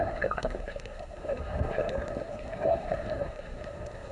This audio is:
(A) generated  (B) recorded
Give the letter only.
A